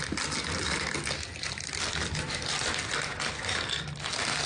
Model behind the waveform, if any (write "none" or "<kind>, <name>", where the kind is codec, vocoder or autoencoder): none